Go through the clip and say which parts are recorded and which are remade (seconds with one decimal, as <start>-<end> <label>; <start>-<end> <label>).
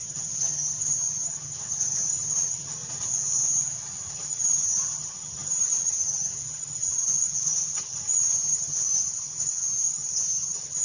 0.0-2.8 remade; 2.8-4.1 recorded; 4.1-10.8 remade